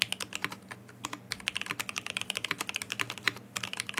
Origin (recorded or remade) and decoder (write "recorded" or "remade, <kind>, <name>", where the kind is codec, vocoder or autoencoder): recorded